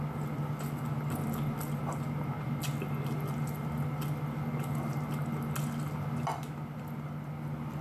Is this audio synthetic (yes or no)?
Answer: no